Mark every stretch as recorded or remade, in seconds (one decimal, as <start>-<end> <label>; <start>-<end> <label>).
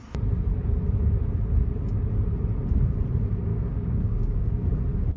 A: 0.0-3.5 recorded; 3.5-4.7 remade; 4.7-5.2 recorded